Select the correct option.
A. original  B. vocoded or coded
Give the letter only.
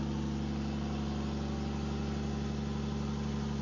A